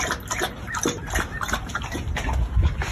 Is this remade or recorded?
recorded